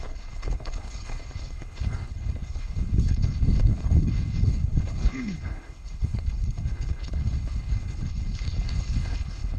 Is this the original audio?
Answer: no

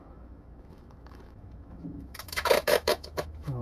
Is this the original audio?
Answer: no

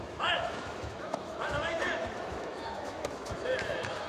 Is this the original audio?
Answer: no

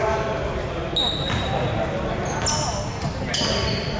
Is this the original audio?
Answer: yes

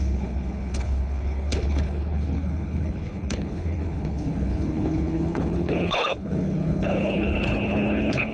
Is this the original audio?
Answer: no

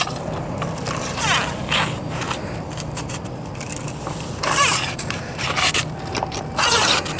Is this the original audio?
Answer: no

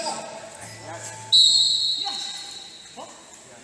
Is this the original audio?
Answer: yes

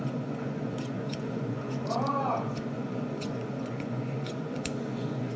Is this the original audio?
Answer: no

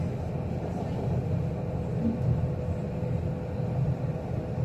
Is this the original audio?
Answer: yes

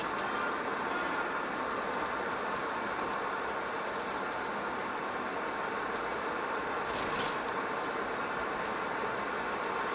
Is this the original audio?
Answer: yes